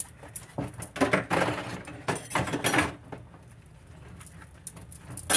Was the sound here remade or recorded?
recorded